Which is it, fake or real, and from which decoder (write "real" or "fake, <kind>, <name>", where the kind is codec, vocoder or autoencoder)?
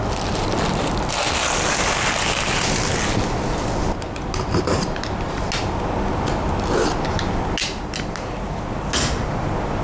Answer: real